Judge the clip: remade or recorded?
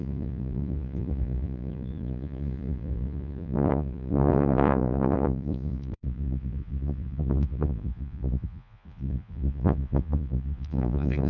remade